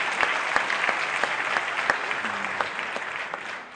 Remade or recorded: recorded